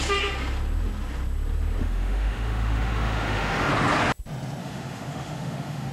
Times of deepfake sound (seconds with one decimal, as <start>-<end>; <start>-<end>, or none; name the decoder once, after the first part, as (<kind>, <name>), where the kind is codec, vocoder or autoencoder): 1.8-3.7 (autoencoder, DAC-VAE); 4.6-5.9